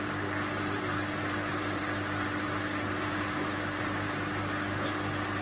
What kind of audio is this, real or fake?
real